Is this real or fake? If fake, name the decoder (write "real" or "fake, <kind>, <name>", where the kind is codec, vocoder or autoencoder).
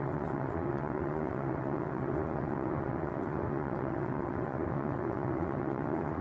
fake, vocoder, WaveNeXt